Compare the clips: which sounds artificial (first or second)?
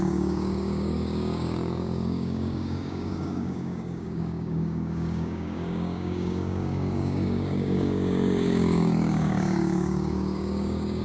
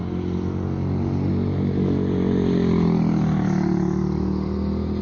first